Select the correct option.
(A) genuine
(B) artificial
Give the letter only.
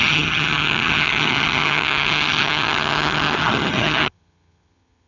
B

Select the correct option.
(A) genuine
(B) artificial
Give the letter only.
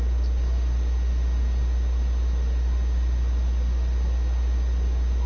A